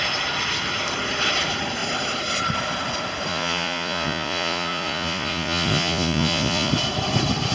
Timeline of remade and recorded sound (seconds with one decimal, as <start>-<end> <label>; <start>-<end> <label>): 0.0-3.3 recorded; 3.3-6.7 remade; 6.7-7.5 recorded